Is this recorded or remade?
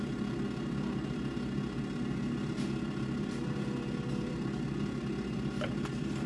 recorded